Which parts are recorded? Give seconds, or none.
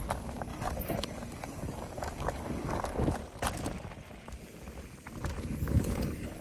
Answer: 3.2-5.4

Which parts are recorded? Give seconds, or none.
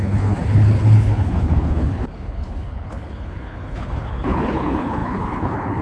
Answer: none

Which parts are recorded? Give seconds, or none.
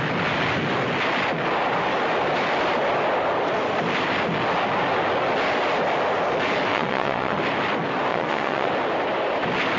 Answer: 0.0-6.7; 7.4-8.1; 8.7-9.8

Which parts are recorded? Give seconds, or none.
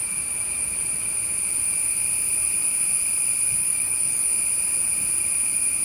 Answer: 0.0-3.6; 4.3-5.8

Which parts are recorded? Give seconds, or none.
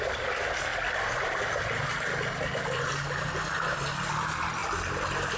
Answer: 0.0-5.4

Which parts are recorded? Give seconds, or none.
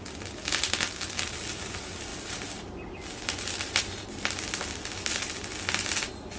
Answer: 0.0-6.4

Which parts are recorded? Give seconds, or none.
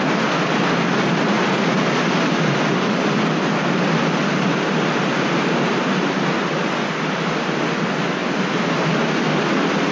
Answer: 0.0-9.9